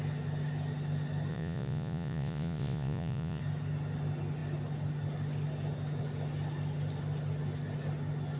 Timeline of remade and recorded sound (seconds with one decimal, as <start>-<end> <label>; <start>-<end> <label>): 0.0-1.3 recorded; 1.3-3.4 remade; 3.4-8.4 recorded